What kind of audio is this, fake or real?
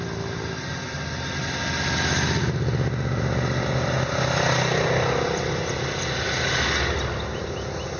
real